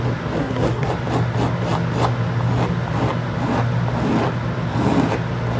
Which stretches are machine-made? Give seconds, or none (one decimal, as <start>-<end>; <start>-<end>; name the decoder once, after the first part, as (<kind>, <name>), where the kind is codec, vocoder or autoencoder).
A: 0.4-0.9 (codec, SNAC)